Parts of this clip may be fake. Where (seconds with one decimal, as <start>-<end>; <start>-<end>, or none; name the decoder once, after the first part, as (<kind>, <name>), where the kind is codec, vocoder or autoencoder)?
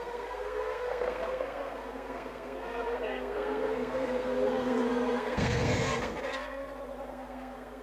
0.0-6.6 (codec, SNAC); 7.1-7.8